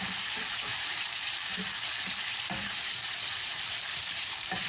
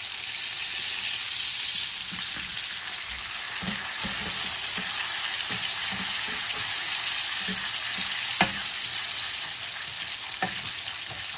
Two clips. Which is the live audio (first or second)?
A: second